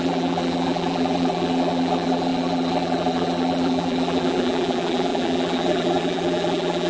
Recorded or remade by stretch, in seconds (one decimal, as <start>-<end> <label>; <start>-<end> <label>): 0.0-6.9 remade